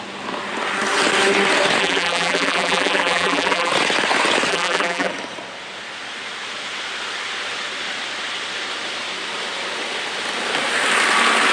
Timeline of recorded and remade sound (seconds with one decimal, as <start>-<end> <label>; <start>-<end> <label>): 0.0-1.8 recorded; 1.8-3.7 remade; 3.7-4.5 recorded; 4.5-5.1 remade; 5.1-11.5 recorded